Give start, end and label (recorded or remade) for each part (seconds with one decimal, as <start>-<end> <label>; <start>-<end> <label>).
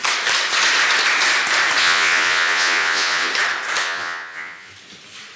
0.0-1.8 recorded; 1.8-3.3 remade; 3.3-3.8 recorded; 3.8-4.7 remade; 4.7-5.4 recorded